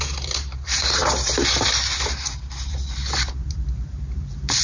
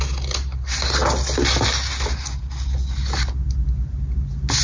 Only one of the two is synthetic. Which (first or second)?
first